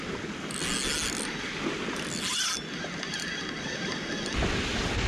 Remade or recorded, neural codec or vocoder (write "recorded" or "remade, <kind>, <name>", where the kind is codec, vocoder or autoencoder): recorded